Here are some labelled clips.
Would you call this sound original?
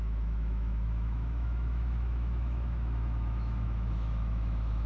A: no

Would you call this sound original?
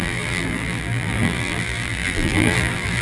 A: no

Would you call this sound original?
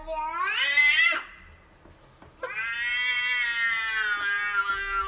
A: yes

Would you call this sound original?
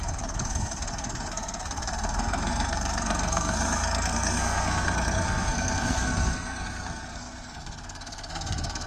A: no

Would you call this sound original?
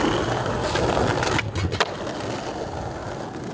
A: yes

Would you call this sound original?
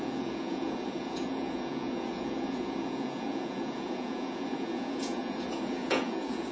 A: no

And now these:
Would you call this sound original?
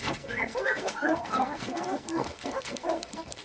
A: no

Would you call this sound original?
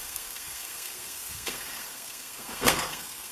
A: no